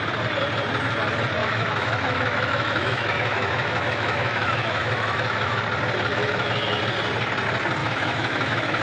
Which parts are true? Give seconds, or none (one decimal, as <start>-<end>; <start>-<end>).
0.0-1.4; 5.6-6.1; 6.8-7.8